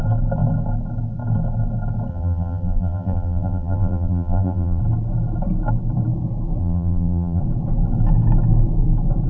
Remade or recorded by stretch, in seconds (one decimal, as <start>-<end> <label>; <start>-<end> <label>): 0.0-2.1 recorded; 2.1-4.8 remade; 4.8-6.6 recorded; 6.6-7.4 remade; 7.4-9.3 recorded